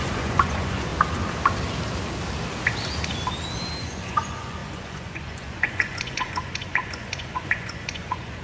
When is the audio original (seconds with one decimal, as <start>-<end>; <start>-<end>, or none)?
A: 0.9-3.8